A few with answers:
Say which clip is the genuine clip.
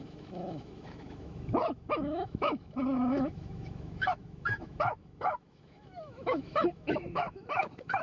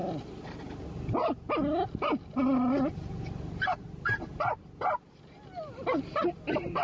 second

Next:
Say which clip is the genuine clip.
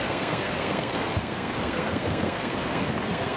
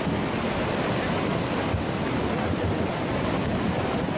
second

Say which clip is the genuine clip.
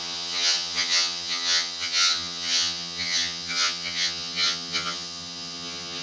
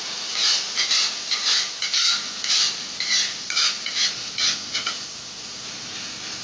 second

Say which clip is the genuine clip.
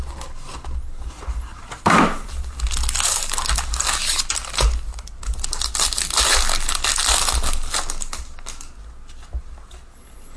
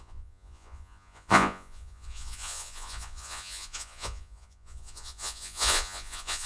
first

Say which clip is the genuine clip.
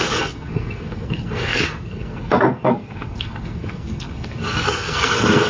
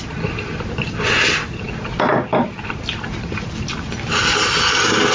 second